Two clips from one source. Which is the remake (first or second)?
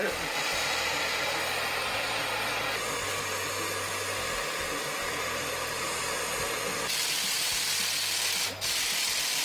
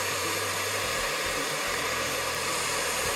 second